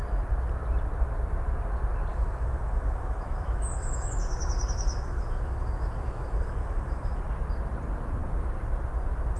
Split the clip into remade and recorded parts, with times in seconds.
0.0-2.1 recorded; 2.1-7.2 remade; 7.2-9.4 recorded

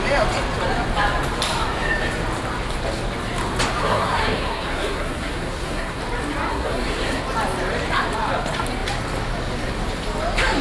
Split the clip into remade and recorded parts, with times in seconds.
0.0-3.8 recorded; 3.8-6.0 remade; 6.0-6.5 recorded; 6.5-7.2 remade; 7.2-10.6 recorded

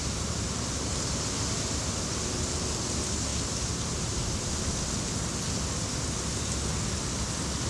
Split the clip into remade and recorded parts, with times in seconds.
0.0-0.9 remade; 0.9-3.3 recorded; 3.3-4.5 remade; 4.5-7.7 recorded

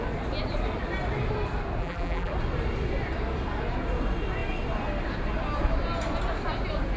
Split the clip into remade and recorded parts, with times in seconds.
0.0-1.8 recorded; 1.8-2.3 remade; 2.3-7.0 recorded

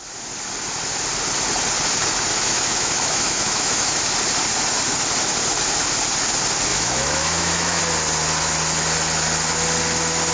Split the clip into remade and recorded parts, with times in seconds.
0.0-2.3 recorded; 2.3-4.0 remade; 4.0-6.7 recorded; 6.7-7.8 remade; 7.8-10.3 recorded

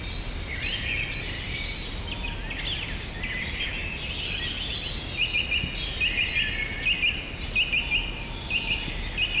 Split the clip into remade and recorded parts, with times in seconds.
0.0-9.4 recorded

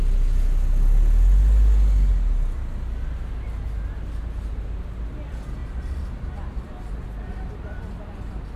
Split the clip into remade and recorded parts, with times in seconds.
0.0-8.6 recorded

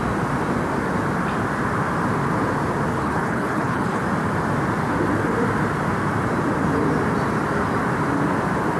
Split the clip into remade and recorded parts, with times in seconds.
0.0-2.9 recorded; 2.9-4.0 remade; 4.0-8.8 recorded